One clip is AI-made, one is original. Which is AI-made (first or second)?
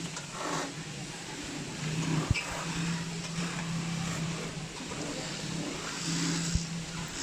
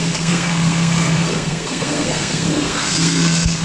second